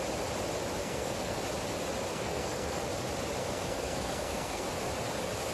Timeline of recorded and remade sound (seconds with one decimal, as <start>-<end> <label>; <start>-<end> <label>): 0.0-0.8 recorded; 0.8-1.4 remade; 1.4-2.1 recorded; 2.1-2.9 remade; 2.9-3.4 recorded; 3.4-4.7 remade; 4.7-5.5 recorded